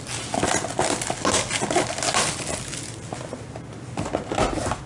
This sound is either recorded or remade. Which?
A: recorded